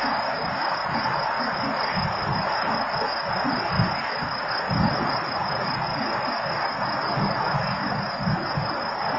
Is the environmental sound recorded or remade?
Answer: recorded